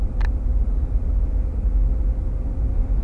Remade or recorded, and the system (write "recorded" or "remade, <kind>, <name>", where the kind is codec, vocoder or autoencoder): recorded